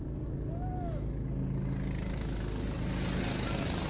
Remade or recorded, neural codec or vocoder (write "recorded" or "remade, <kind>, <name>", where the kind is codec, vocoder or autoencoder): recorded